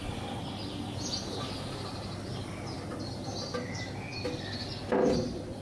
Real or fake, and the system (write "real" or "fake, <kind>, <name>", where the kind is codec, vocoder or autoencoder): real